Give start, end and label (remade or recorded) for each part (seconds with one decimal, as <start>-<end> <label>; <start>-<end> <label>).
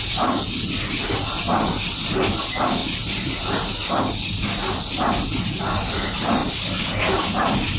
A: 0.0-7.8 recorded